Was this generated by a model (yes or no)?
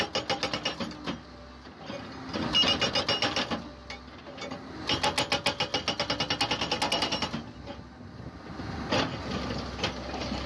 no